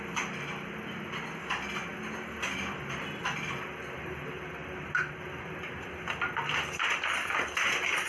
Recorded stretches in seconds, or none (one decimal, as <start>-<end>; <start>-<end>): 0.0-8.1